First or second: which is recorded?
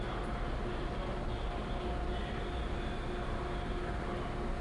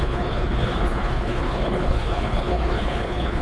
first